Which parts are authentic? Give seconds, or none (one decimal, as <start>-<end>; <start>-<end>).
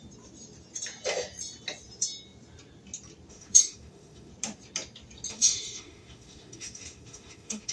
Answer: 0.0-3.3; 4.3-5.3